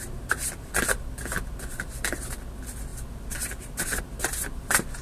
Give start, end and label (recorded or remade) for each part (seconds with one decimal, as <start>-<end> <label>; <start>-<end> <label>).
0.0-5.0 recorded